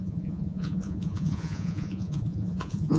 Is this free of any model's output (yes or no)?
no